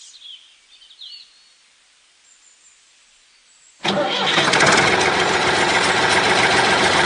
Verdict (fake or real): real